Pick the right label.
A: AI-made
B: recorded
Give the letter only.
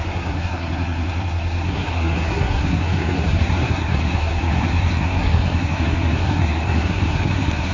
A